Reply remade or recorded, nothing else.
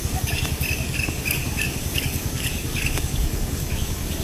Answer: remade